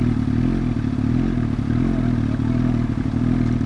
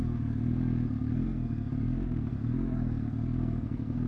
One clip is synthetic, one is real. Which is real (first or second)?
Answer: first